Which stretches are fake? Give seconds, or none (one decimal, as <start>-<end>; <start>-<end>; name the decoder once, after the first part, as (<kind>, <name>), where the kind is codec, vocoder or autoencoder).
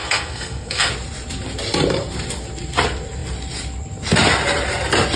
0.0-0.9 (codec, SNAC)